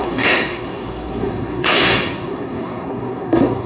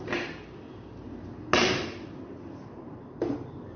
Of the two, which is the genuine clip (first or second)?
second